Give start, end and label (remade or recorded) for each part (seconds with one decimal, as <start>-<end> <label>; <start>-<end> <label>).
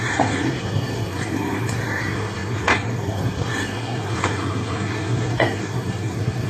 0.0-6.5 remade